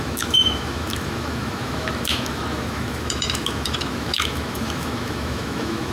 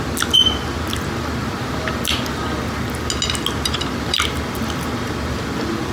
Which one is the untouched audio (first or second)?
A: second